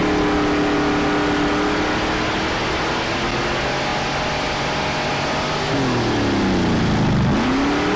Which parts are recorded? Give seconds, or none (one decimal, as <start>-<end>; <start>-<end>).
0.0-8.0

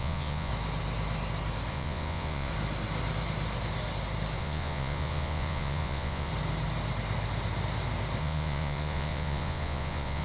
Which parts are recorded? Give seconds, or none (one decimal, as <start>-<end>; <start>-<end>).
0.5-1.7; 2.5-4.4; 6.3-8.2

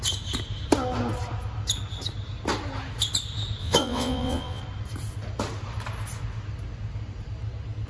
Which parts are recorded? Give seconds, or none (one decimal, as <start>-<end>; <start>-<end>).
0.0-3.6; 4.6-7.9